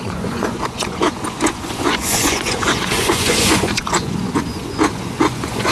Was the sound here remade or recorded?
remade